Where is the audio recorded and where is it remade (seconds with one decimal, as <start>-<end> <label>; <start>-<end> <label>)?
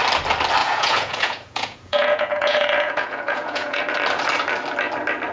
0.0-0.6 recorded; 0.6-3.8 remade; 3.8-5.3 recorded